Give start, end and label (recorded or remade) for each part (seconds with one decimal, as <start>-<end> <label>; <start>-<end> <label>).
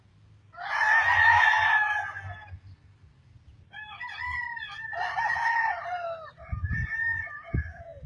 0.0-8.1 recorded